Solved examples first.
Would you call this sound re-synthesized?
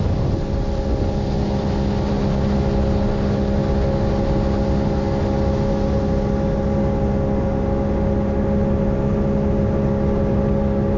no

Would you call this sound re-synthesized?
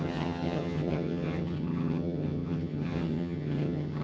yes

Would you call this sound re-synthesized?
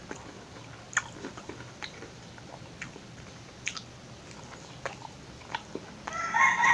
no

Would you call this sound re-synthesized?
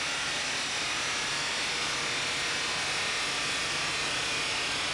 no